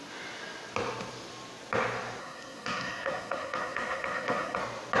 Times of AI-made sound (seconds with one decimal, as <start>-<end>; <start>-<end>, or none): 2.2-4.6